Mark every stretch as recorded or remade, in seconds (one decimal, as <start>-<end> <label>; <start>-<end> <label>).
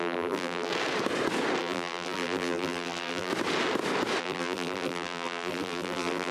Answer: 0.0-0.7 remade; 0.7-1.6 recorded; 1.6-3.3 remade; 3.3-4.2 recorded; 4.2-6.3 remade